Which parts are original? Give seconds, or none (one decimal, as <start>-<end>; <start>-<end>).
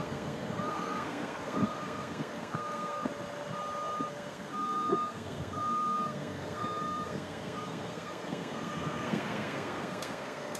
3.1-4.1